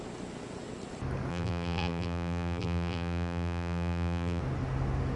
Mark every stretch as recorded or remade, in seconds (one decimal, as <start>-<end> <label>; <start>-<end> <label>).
0.0-1.3 recorded; 1.3-4.4 remade; 4.4-5.2 recorded